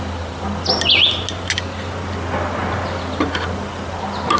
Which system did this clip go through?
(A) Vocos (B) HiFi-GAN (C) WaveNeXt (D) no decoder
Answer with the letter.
D